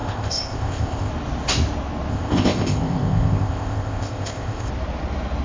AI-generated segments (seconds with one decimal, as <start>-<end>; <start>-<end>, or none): 0.0-1.1; 2.1-4.7